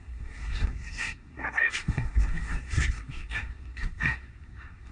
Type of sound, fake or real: fake